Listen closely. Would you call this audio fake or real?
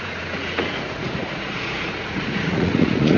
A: fake